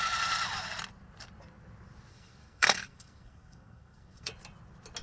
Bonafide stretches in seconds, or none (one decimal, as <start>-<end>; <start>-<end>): 0.0-2.1; 4.3-5.0